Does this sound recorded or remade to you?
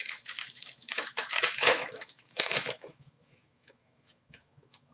remade